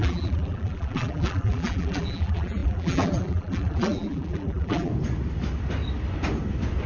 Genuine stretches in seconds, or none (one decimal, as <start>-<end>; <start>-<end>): 4.9-6.9